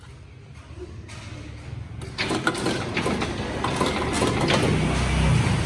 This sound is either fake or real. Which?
real